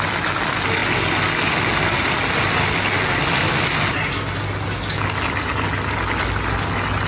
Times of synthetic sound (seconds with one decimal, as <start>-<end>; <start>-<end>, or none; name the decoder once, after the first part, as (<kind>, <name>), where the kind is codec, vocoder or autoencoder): none